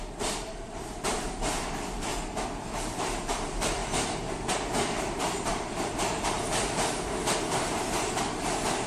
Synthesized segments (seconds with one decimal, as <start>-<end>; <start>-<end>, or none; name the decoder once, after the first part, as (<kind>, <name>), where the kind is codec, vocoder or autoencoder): 0.0-2.1 (vocoder, BigVGAN v2); 2.7-8.9